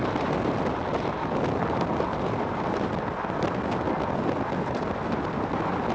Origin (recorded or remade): recorded